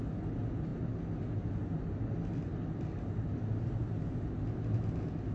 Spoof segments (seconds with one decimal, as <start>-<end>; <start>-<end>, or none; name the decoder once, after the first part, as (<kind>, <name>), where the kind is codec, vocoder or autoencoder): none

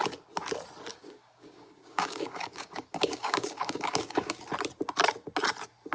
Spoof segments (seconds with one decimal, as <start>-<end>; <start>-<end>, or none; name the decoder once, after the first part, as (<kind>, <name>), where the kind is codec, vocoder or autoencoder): 0.9-4.4 (codec, DAC)

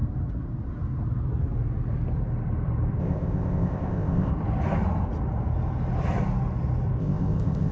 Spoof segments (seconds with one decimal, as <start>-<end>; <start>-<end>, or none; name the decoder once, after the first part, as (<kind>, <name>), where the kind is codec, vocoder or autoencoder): 3.0-4.3 (codec, ZipCodec); 7.0-7.7